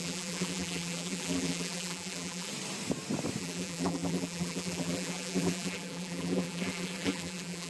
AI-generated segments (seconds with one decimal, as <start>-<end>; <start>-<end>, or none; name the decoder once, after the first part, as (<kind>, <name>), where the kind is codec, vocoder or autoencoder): 0.0-2.5 (vocoder, BigVGAN v2); 3.4-7.7